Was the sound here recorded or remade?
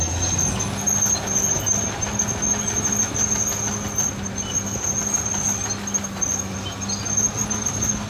recorded